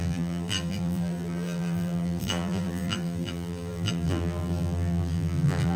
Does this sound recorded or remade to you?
remade